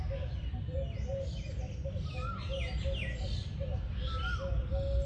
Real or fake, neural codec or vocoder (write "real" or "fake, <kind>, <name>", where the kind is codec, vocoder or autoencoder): real